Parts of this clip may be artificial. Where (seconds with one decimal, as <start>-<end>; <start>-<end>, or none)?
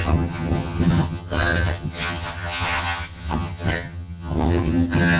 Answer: 0.0-5.2